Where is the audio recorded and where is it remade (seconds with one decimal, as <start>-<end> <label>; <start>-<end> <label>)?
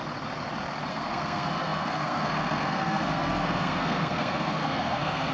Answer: 0.0-0.9 recorded; 0.9-5.3 remade